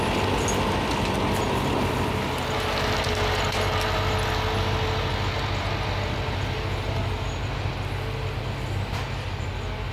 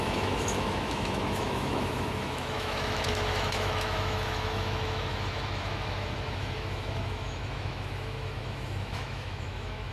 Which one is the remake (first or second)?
second